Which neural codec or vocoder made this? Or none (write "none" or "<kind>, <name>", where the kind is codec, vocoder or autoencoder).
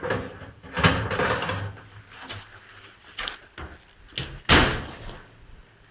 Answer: none